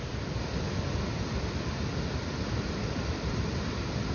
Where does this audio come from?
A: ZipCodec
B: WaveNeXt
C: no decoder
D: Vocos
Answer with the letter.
C